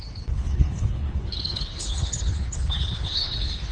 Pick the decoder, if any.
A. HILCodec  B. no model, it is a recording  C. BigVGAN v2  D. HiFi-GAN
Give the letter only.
A